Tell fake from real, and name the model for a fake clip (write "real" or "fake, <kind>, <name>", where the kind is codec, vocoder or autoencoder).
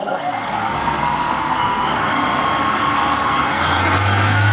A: fake, codec, SNAC